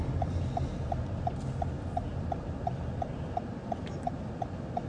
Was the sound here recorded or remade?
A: recorded